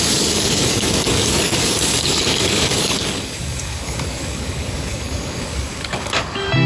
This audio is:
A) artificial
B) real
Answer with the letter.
A